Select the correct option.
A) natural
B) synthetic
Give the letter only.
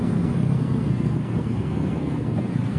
B